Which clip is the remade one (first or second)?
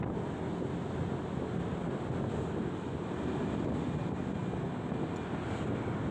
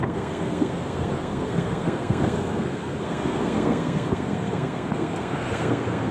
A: second